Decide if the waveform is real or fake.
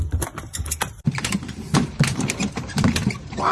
fake